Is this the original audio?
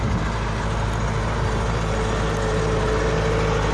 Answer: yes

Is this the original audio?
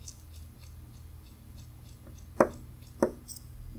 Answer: yes